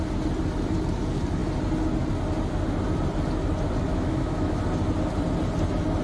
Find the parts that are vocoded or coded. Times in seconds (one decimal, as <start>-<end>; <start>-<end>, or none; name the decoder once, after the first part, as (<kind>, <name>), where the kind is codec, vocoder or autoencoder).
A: 3.9-4.6 (autoencoder, DAC-VAE)